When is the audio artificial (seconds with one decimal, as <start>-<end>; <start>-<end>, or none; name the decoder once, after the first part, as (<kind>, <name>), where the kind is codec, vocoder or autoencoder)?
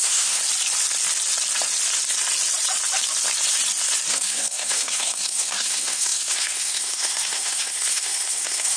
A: 0.0-0.4 (codec, SNAC); 4.1-8.8